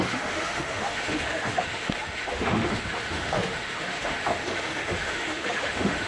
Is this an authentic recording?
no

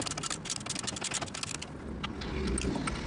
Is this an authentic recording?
yes